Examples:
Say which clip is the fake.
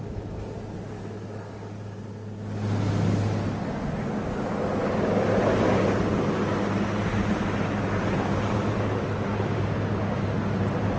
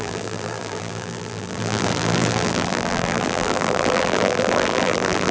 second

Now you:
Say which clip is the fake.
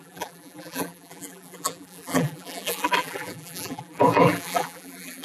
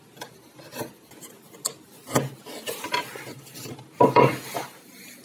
first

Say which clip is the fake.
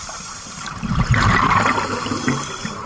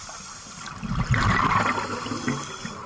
first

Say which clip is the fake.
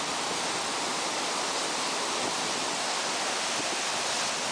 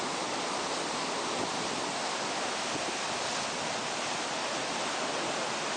first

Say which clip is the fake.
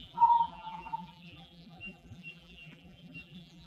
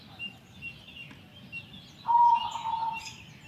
first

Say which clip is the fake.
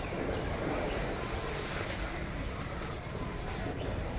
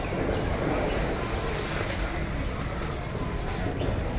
first